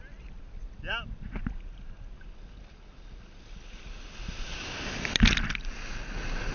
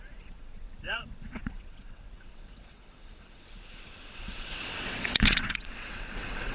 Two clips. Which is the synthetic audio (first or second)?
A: second